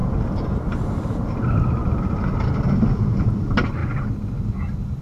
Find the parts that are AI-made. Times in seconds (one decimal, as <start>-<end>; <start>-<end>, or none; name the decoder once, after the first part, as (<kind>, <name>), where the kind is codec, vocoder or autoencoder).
none